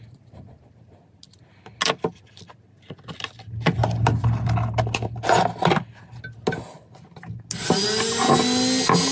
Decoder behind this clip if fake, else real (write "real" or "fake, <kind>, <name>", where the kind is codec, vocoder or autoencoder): real